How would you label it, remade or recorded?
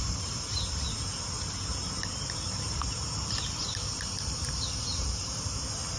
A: remade